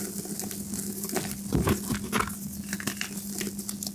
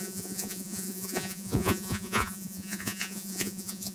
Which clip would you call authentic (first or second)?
first